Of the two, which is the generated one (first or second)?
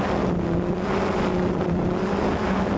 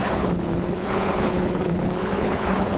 second